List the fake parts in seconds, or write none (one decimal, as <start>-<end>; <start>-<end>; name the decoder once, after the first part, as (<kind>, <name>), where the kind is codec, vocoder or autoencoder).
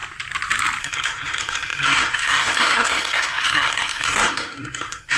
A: 0.8-5.2 (codec, SNAC)